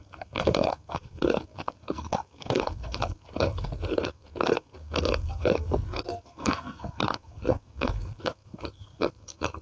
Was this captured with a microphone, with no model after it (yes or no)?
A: no